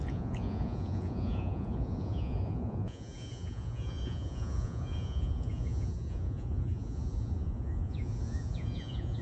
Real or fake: fake